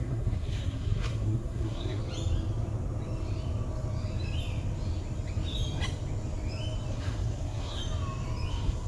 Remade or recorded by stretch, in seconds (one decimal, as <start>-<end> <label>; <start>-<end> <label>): 0.0-2.0 remade; 2.0-6.9 recorded; 6.9-7.8 remade; 7.8-8.5 recorded; 8.5-8.9 remade